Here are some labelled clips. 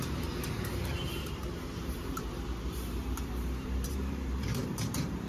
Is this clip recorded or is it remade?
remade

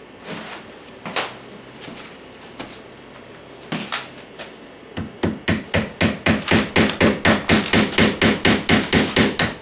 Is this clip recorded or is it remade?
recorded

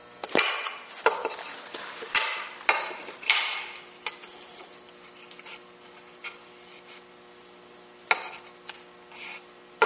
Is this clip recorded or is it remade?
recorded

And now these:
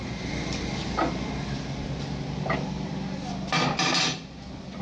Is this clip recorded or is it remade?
recorded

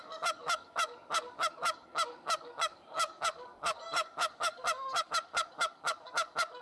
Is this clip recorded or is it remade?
remade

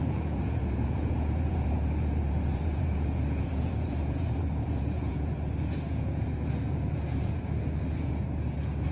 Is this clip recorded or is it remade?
remade